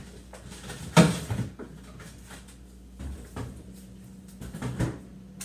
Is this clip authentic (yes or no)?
yes